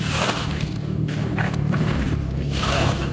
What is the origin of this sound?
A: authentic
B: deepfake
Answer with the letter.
B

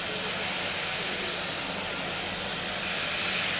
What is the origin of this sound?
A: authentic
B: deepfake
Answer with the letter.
A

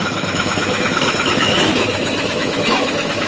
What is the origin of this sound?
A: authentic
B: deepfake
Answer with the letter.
B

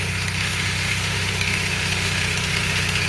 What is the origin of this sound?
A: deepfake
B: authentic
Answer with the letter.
A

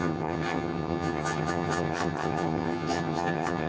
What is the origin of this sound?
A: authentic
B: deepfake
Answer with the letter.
B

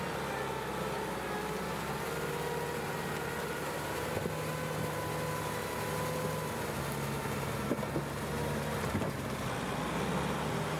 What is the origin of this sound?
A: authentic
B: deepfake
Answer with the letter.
A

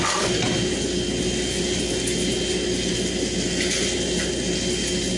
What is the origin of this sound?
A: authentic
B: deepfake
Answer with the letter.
A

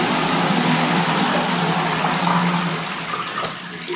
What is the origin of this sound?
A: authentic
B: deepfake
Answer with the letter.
A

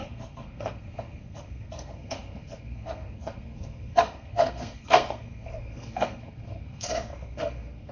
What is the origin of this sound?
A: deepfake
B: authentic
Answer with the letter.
A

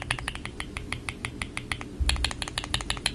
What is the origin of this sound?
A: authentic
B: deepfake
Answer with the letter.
A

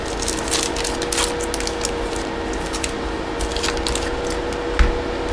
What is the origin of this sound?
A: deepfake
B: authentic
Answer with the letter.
B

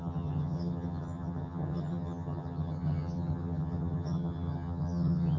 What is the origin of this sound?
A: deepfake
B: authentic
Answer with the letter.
A